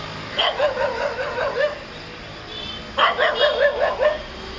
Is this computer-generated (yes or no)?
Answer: no